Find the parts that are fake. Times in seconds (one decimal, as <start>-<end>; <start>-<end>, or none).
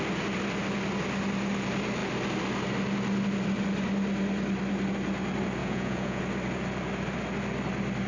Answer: 5.6-6.2